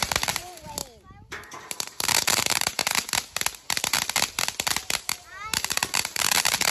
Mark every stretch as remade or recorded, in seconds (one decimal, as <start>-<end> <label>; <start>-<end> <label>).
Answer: 0.0-0.8 remade; 0.8-1.6 recorded; 1.6-2.8 remade; 2.8-5.0 recorded; 5.0-6.7 remade